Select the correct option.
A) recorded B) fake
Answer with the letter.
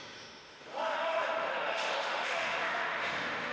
B